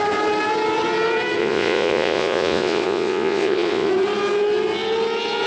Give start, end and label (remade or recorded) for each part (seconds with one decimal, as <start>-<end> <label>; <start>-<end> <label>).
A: 0.0-1.4 recorded; 1.4-3.9 remade; 3.9-5.5 recorded

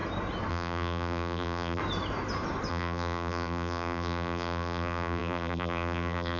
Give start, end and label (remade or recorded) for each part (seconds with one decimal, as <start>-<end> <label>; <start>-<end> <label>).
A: 0.0-0.5 recorded; 0.5-1.8 remade; 1.8-2.7 recorded; 2.7-6.4 remade

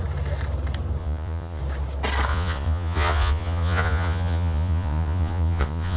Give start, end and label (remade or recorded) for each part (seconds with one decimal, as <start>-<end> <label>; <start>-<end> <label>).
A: 0.0-1.0 recorded; 1.0-1.6 remade; 1.6-2.3 recorded; 2.3-6.0 remade